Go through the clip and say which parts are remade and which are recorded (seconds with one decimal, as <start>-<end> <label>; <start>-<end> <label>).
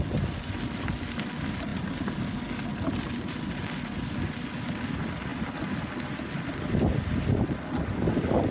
0.0-8.5 recorded